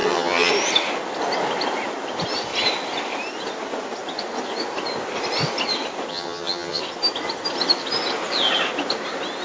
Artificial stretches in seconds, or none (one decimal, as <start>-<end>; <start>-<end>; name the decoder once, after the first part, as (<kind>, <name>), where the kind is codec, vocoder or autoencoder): 0.0-0.5 (vocoder, HiFi-GAN); 6.1-6.8